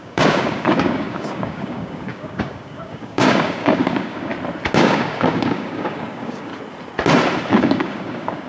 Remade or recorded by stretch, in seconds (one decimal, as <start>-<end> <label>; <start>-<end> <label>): 0.0-4.3 remade; 4.3-4.8 recorded; 4.8-6.5 remade; 6.5-7.5 recorded; 7.5-8.5 remade